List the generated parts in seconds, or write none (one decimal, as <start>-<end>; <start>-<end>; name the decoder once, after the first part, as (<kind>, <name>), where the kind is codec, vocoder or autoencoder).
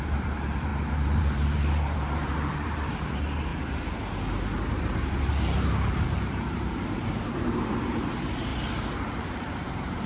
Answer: 0.0-3.5 (vocoder, BigVGAN v2); 5.2-8.5; 9.2-10.1